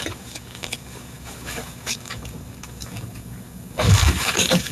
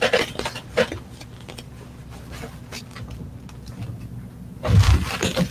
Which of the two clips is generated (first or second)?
first